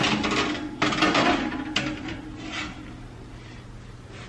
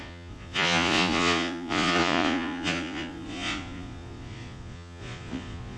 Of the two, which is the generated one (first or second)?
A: second